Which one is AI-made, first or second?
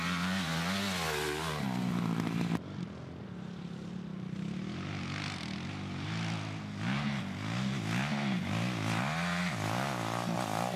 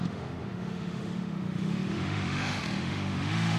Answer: second